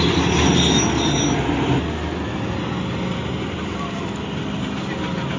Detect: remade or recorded recorded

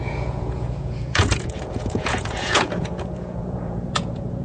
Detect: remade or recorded remade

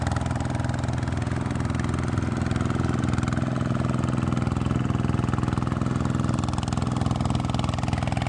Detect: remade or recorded recorded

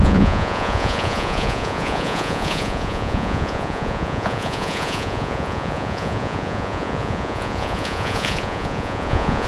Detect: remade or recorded remade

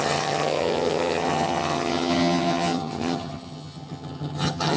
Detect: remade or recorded remade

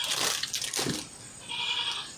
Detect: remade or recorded recorded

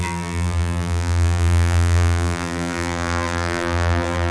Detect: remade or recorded remade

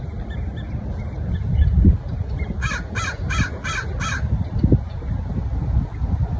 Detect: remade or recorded recorded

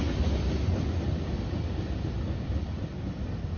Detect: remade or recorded recorded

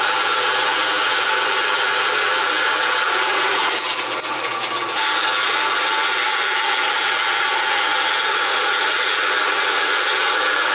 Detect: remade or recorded remade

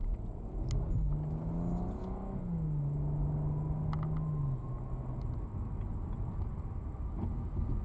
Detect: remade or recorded recorded